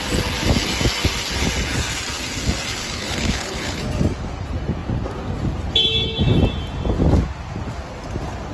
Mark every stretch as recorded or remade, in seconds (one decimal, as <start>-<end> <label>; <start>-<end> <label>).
0.0-2.8 recorded; 2.8-3.8 remade; 3.8-8.5 recorded